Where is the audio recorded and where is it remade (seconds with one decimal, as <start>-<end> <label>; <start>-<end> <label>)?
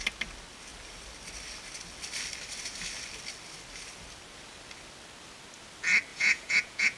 0.0-6.1 recorded; 6.1-7.0 remade